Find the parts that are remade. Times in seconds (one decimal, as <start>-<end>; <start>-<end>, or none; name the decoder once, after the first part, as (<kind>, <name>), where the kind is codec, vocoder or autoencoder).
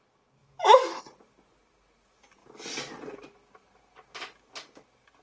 0.4-1.0 (autoencoder, DAC-VAE)